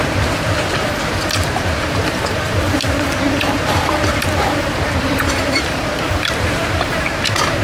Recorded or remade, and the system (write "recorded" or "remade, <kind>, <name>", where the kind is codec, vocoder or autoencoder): remade, vocoder, BigVGAN v2